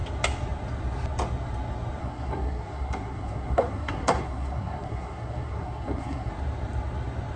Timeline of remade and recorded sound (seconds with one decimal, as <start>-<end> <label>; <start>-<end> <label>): 0.0-2.0 recorded; 2.0-6.3 remade; 6.3-7.4 recorded